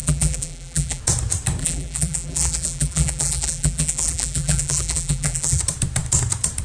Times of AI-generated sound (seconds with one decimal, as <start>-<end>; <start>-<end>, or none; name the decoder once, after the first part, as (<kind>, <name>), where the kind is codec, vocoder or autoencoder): 0.0-1.0 (vocoder, BigVGAN v2); 1.6-5.6